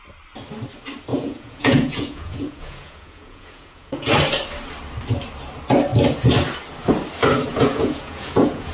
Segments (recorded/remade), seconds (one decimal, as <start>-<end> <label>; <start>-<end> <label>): 0.0-1.1 recorded; 1.1-4.1 remade; 4.1-7.5 recorded; 7.5-8.7 remade